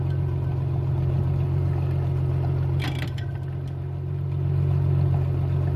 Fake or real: real